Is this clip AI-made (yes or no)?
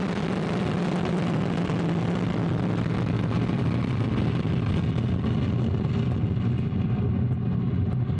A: no